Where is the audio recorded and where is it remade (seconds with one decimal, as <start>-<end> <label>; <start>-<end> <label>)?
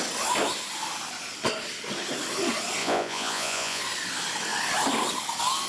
0.0-2.8 recorded; 2.8-3.8 remade; 3.8-5.7 recorded